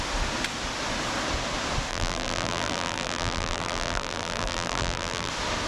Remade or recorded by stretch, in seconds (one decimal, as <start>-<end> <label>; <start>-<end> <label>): 0.0-1.9 recorded; 1.9-5.3 remade; 5.3-5.7 recorded